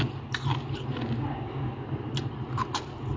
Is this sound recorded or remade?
recorded